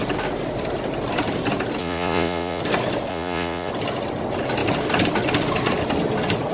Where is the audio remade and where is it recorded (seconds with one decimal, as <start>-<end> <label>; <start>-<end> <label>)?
0.0-1.8 recorded; 1.8-2.6 remade; 2.6-3.1 recorded; 3.1-3.7 remade; 3.7-6.5 recorded